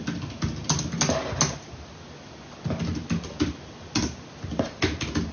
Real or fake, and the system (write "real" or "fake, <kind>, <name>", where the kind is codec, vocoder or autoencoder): real